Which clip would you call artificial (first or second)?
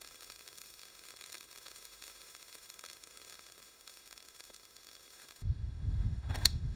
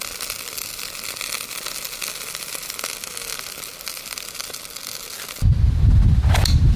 first